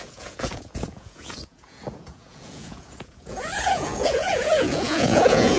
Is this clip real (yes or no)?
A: no